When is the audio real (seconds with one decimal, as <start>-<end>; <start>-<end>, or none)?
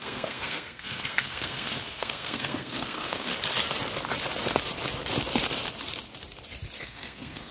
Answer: 3.3-6.8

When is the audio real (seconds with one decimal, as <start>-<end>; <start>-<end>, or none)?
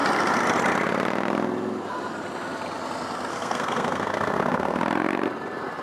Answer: 0.0-3.3; 4.8-5.8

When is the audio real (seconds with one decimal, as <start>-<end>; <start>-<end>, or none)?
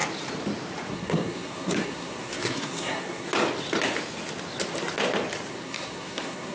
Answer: 0.0-0.9; 3.3-5.5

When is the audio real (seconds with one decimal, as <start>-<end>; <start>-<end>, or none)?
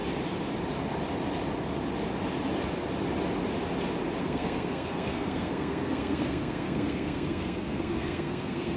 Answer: 0.0-4.2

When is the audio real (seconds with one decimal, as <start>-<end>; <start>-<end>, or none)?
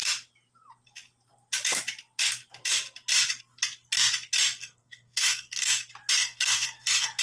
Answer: 0.0-4.6; 5.8-6.2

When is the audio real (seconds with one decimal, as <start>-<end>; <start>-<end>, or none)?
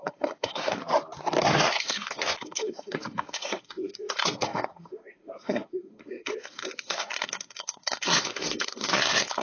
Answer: 0.8-1.4